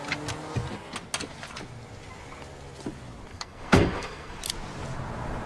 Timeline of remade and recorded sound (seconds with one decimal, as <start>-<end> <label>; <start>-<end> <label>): 0.0-3.3 recorded; 3.3-4.4 remade; 4.4-5.5 recorded